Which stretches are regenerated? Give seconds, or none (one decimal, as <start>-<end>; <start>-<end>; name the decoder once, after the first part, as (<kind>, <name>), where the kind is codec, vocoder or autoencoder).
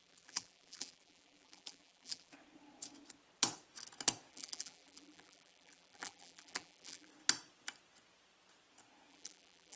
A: 0.0-2.3 (vocoder, BigVGAN v2); 4.3-7.1; 9.1-9.8